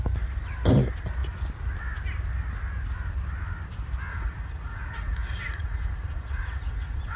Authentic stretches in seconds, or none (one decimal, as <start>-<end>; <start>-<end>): 0.0-4.1